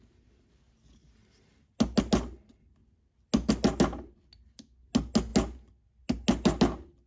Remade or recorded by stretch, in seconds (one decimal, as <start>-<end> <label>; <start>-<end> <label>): 0.0-7.1 recorded